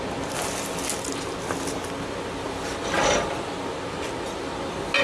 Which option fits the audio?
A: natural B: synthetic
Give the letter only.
A